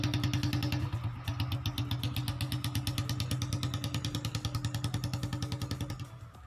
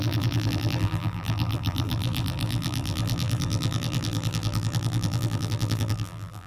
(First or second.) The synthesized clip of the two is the second